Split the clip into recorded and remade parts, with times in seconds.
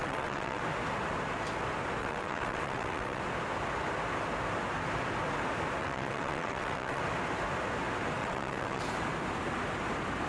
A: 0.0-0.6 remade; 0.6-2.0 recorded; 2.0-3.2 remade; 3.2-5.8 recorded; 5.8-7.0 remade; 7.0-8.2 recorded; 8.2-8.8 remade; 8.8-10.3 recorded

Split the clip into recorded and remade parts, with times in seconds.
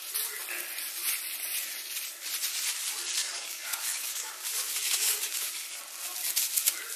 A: 0.0-3.2 recorded; 3.2-5.6 remade; 5.6-7.0 recorded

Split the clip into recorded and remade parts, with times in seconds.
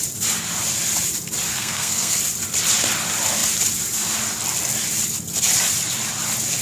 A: 0.0-1.5 recorded; 1.5-2.2 remade; 2.2-6.6 recorded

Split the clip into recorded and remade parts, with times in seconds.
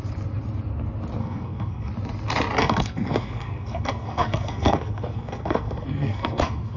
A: 0.0-1.2 recorded; 1.2-1.9 remade; 1.9-2.6 recorded; 2.6-6.8 remade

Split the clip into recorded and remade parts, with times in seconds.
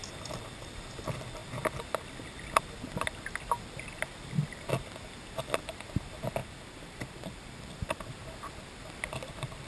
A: 0.0-0.8 remade; 0.8-6.4 recorded; 6.4-8.1 remade; 8.1-9.7 recorded